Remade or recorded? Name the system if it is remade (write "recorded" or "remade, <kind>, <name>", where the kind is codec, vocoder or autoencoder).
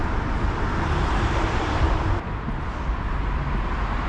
remade, vocoder, BigVGAN v2